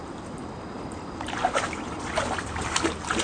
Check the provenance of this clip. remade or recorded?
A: recorded